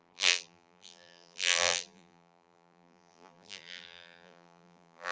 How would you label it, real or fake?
fake